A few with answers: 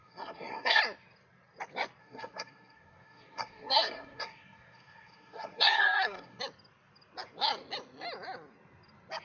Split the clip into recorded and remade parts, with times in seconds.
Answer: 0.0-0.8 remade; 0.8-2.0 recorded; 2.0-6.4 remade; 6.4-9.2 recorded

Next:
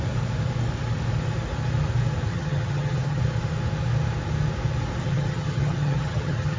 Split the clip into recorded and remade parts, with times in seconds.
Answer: 0.0-2.3 recorded; 2.3-3.2 remade; 3.2-5.0 recorded; 5.0-6.6 remade

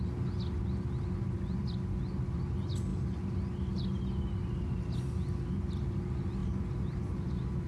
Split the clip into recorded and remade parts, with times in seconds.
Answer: 0.0-7.7 recorded

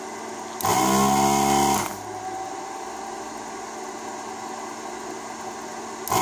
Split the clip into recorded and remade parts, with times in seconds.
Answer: 0.0-6.2 recorded